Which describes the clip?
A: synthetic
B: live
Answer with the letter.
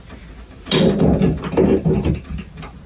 B